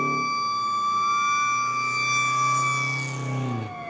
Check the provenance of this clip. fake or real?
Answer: real